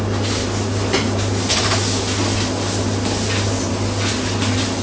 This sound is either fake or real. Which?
real